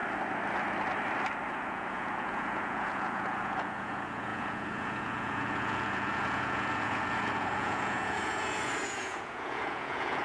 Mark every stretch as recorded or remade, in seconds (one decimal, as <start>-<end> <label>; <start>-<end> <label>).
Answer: 0.0-1.5 recorded; 1.5-10.2 remade